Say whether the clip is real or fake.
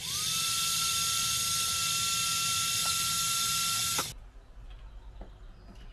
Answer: real